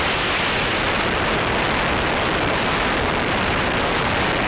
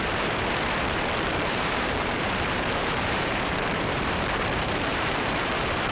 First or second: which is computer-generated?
second